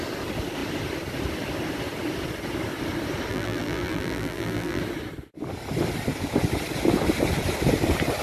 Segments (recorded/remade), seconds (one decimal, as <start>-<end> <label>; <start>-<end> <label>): 0.0-3.3 recorded; 3.3-4.8 remade; 4.8-8.2 recorded